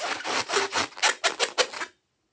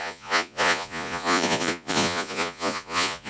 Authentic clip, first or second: first